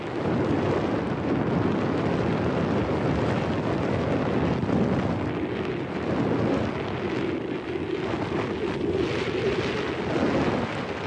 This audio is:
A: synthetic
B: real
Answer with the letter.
B